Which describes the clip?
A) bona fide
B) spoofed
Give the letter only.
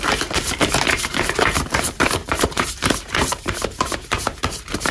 B